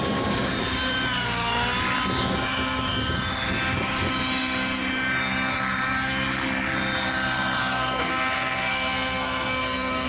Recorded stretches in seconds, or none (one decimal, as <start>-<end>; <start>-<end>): 0.0-7.6